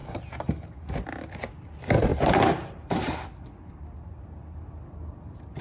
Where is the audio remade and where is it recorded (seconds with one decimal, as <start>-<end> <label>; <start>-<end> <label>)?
0.0-0.9 remade; 0.9-2.1 recorded; 2.1-3.7 remade; 3.7-5.6 recorded